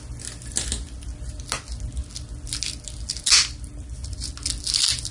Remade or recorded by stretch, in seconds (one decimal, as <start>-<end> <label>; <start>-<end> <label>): 0.0-5.1 recorded